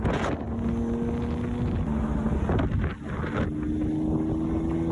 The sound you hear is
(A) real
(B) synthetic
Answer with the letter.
A